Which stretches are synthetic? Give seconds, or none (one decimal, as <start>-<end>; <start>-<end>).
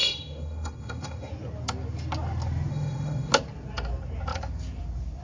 0.0-1.3; 2.7-3.3